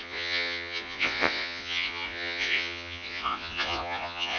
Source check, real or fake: fake